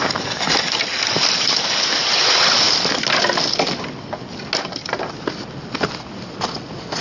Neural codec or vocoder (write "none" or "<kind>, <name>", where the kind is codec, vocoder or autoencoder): none